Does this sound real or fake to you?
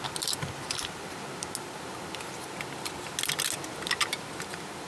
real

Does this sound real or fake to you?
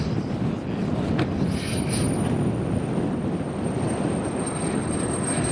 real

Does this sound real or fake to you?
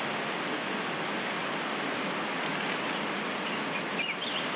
real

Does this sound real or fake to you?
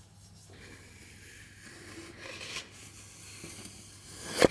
real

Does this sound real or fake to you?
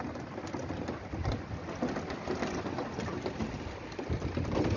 real